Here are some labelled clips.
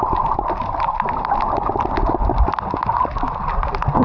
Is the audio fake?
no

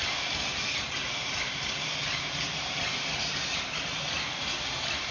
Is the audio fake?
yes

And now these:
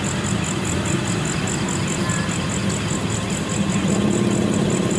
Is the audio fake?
no